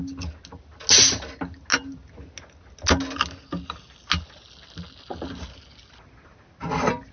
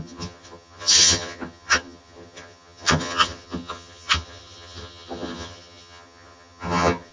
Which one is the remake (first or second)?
second